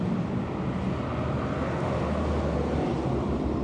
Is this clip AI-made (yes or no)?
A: no